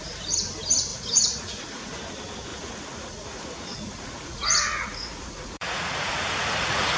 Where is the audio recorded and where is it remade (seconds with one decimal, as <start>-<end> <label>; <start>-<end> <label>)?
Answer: 0.0-0.9 recorded; 0.9-2.0 remade; 2.0-2.5 recorded; 2.5-7.0 remade

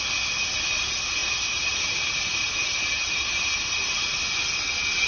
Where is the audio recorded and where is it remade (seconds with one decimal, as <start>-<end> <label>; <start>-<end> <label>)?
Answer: 0.0-1.2 recorded; 1.2-4.2 remade; 4.2-5.1 recorded

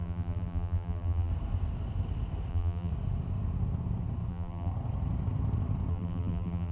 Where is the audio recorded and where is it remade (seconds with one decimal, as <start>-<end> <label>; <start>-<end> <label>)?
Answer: 0.0-1.3 remade; 1.3-2.5 recorded; 2.5-2.9 remade; 2.9-4.3 recorded; 4.3-4.7 remade; 4.7-5.9 recorded; 5.9-6.7 remade

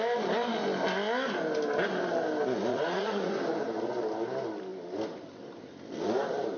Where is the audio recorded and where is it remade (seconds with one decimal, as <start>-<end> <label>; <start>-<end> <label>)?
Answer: 0.0-2.7 recorded; 2.7-3.3 remade; 3.3-6.6 recorded